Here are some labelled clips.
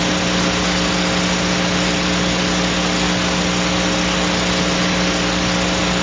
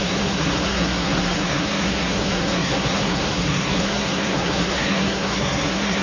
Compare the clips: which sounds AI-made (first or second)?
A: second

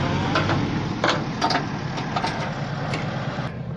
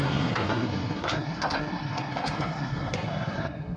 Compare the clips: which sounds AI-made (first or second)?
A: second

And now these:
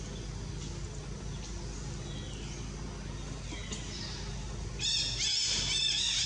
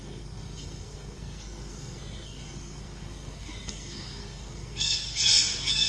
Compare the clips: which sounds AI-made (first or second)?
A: second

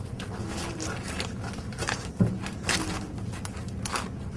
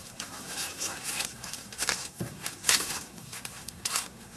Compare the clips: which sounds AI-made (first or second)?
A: second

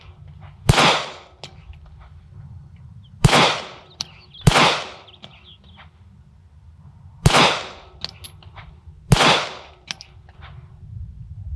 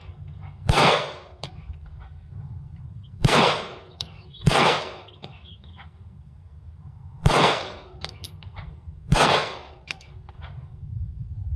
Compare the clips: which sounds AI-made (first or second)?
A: second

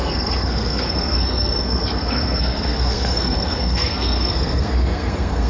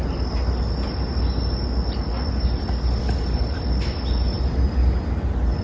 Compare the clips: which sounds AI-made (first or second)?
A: first